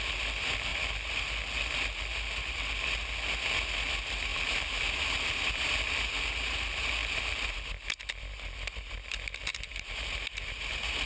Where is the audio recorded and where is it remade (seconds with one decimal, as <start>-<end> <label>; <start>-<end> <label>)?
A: 0.0-4.3 recorded; 4.3-5.9 remade; 5.9-7.0 recorded; 7.0-7.5 remade; 7.5-9.5 recorded; 9.5-11.1 remade